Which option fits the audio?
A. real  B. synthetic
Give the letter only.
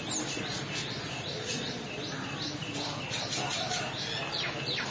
A